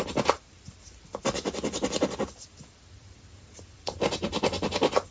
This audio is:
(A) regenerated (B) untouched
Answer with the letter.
A